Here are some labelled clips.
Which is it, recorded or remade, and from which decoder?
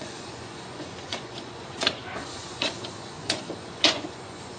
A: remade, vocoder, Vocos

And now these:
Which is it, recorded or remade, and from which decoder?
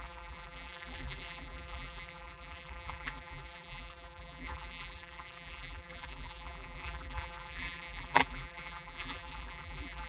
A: remade, vocoder, BigVGAN v2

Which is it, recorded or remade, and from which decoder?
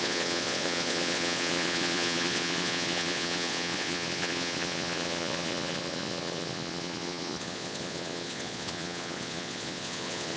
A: remade, vocoder, Vocos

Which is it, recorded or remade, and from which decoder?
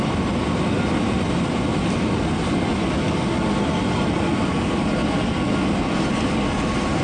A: recorded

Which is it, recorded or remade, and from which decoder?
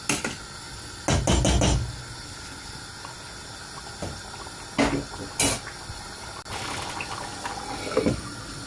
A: recorded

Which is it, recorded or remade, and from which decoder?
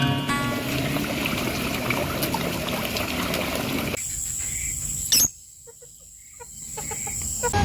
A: recorded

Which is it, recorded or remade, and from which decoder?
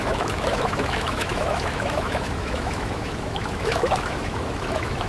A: remade, autoencoder, DAC-VAE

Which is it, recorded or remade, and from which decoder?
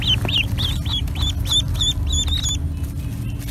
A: recorded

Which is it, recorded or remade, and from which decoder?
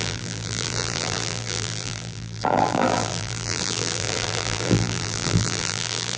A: remade, vocoder, BigVGAN v2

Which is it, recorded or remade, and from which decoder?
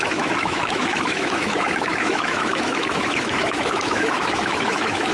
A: remade, autoencoder, DAC-VAE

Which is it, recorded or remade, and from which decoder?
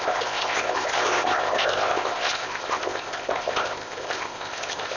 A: remade, codec, ZipCodec